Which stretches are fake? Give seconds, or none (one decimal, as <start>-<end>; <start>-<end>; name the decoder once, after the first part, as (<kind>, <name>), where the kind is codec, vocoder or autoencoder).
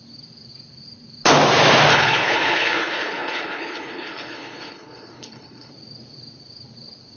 1.9-5.7 (codec, HILCodec)